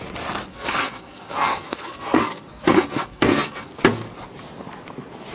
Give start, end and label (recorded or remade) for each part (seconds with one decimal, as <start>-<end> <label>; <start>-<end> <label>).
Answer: 0.0-0.5 recorded; 0.5-3.7 remade; 3.7-5.3 recorded